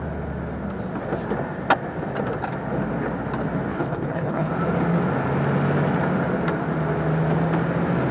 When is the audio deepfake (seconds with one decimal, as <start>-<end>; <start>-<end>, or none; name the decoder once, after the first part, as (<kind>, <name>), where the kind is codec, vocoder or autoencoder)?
3.7-4.5 (codec, HILCodec)